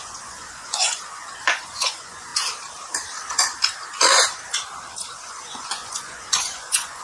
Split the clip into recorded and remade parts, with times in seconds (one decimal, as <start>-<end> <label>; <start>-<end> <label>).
0.0-2.3 remade; 2.3-5.1 recorded; 5.1-7.0 remade